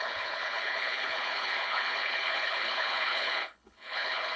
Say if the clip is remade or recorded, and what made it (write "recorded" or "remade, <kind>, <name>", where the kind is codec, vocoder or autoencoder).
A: remade, codec, HILCodec